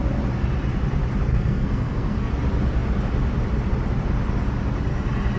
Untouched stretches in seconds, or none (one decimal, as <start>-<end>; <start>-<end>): 0.0-1.3; 2.3-5.4